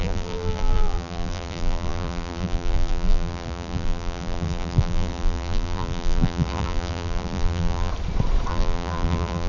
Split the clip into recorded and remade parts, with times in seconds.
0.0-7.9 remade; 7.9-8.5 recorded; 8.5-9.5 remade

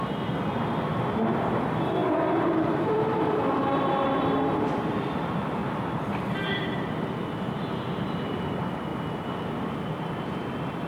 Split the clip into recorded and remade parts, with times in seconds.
0.0-2.0 recorded; 2.0-4.0 remade; 4.0-5.6 recorded; 5.6-7.6 remade; 7.6-10.9 recorded

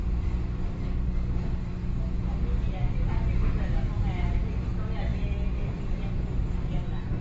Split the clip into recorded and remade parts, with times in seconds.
0.0-0.9 remade; 0.9-5.1 recorded; 5.1-6.8 remade; 6.8-7.2 recorded

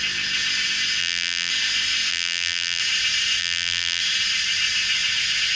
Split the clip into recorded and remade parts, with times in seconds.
0.0-1.0 recorded; 1.0-1.5 remade; 1.5-2.1 recorded; 2.1-2.8 remade; 2.8-3.4 recorded; 3.4-4.0 remade; 4.0-5.5 recorded

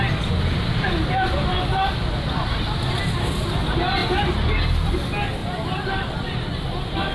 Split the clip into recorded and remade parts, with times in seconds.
0.0-5.4 recorded; 5.4-6.1 remade; 6.1-7.1 recorded